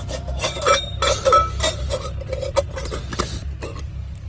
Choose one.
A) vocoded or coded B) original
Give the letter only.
B